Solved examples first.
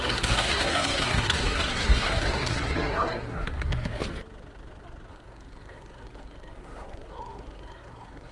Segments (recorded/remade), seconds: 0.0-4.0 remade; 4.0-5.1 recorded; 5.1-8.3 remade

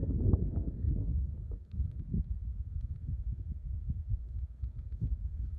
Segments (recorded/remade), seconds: 0.0-2.0 remade; 2.0-2.4 recorded; 2.4-5.6 remade

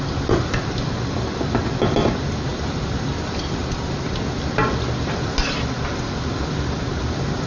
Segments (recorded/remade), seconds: 0.0-7.5 recorded

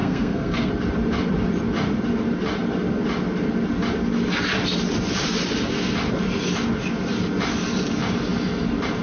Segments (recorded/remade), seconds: 0.0-0.7 remade; 0.7-9.0 recorded